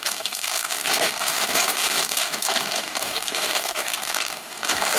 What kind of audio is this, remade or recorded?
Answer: remade